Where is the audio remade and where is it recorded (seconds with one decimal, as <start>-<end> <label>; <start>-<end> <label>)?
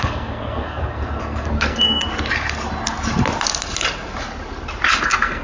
0.0-2.1 remade; 2.1-5.0 recorded; 5.0-5.4 remade